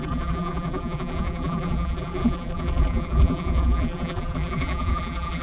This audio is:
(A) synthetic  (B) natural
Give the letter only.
A